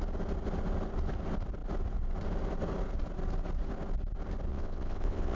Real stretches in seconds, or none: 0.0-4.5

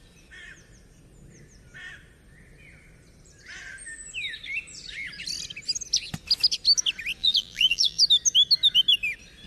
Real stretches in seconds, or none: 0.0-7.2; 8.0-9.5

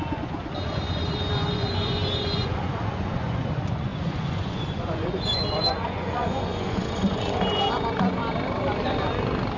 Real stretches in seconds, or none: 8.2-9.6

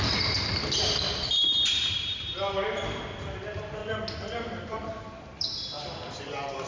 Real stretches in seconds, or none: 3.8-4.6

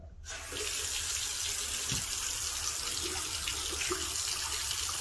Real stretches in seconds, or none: 0.0-5.0

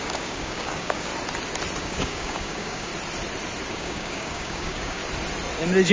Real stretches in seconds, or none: 1.1-1.8; 2.9-3.7; 5.0-5.9

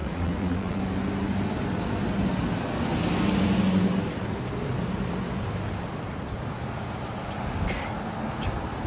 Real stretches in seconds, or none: 0.8-8.9

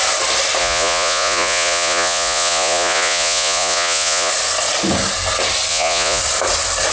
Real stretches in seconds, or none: 0.0-0.6; 4.3-5.7; 6.2-6.9